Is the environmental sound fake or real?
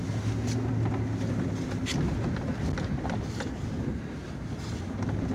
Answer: real